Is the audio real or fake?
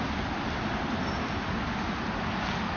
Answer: real